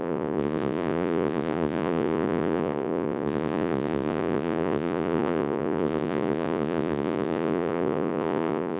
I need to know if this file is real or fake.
fake